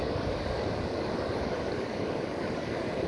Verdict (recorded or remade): remade